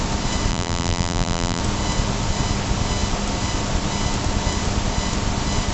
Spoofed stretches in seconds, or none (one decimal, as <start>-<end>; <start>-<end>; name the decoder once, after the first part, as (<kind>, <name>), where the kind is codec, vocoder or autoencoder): 0.5-1.6 (vocoder, BigVGAN v2)